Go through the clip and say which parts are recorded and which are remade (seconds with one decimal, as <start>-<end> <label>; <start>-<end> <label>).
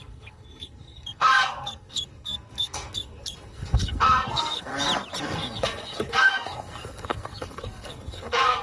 0.0-4.7 remade; 4.7-5.2 recorded; 5.2-8.6 remade